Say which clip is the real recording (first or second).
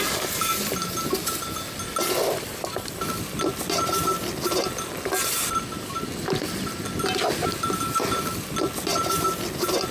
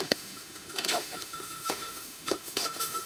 first